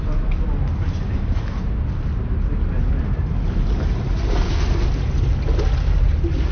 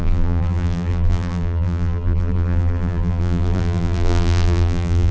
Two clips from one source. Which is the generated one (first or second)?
second